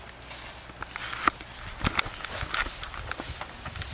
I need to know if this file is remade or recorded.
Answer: recorded